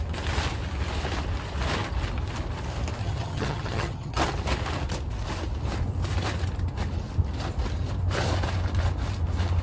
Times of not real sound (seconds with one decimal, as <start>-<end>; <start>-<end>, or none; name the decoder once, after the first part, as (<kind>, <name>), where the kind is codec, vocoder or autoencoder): 3.0-4.2 (vocoder, HiFi-GAN)